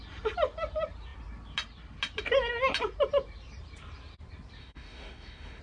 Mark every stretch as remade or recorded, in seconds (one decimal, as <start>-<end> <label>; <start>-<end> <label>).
0.0-4.6 recorded; 4.6-5.6 remade